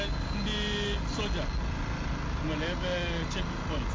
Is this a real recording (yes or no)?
yes